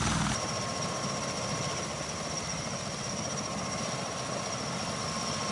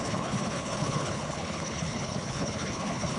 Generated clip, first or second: second